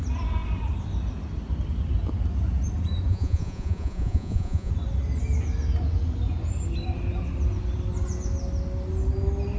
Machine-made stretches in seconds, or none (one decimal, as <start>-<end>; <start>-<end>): 3.1-4.7